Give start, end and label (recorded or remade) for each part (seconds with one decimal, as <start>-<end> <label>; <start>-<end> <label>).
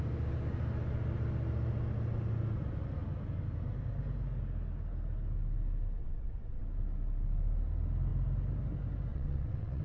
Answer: 0.0-6.0 recorded; 6.0-6.6 remade; 6.6-9.1 recorded; 9.1-9.8 remade